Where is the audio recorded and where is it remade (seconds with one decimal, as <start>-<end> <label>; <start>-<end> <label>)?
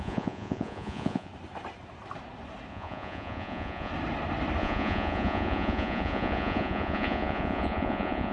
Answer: 0.0-1.3 remade; 1.3-2.7 recorded; 2.7-3.9 remade; 3.9-4.6 recorded; 4.6-8.3 remade